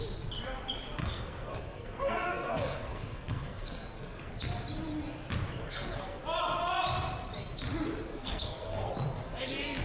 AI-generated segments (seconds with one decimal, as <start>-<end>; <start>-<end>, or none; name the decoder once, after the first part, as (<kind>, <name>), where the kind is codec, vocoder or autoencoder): 1.0-4.3 (codec, SNAC); 5.6-6.2; 8.1-8.9